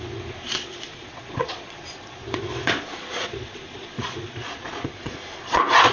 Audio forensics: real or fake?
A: fake